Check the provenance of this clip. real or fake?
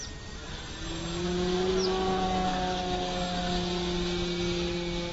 real